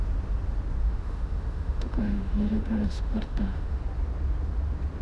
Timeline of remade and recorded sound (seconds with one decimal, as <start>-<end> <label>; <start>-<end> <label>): 0.0-0.8 recorded; 0.8-3.8 remade; 3.8-5.0 recorded

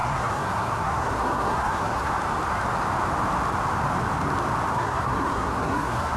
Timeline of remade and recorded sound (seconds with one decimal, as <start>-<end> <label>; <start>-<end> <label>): 0.0-2.1 remade; 2.1-4.7 recorded; 4.7-6.2 remade